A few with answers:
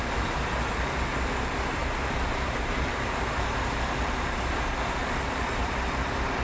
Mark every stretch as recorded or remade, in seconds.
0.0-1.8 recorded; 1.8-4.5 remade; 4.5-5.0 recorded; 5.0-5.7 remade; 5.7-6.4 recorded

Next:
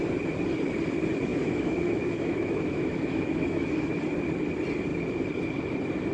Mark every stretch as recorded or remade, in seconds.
0.0-1.3 recorded; 1.3-4.0 remade; 4.0-6.1 recorded

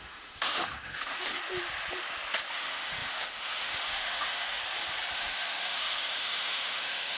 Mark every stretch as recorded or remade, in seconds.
0.0-1.4 remade; 1.4-2.5 recorded; 2.5-4.6 remade; 4.6-5.1 recorded; 5.1-7.2 remade

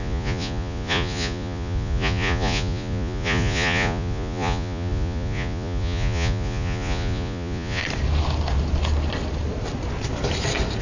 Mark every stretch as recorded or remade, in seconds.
0.0-7.8 remade; 7.8-10.8 recorded

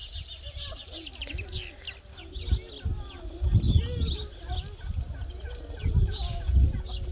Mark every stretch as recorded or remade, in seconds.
0.0-7.1 recorded

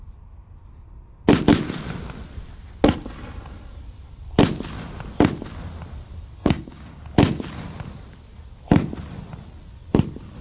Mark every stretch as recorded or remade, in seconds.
0.0-6.4 recorded; 6.4-7.0 remade; 7.0-10.4 recorded

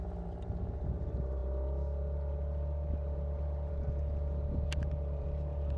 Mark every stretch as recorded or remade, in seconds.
0.0-5.8 recorded